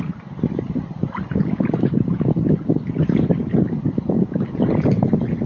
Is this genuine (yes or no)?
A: yes